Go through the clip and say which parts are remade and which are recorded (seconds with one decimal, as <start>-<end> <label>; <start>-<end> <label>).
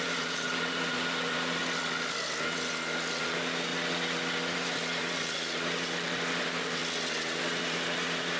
0.0-1.6 remade; 1.6-3.2 recorded; 3.2-3.7 remade; 3.7-4.5 recorded; 4.5-6.8 remade; 6.8-7.4 recorded; 7.4-8.4 remade